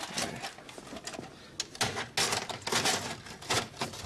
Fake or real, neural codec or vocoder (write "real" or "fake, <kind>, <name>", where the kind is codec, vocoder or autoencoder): real